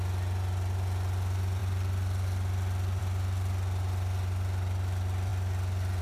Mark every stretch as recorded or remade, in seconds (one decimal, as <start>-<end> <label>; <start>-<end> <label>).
0.0-6.0 recorded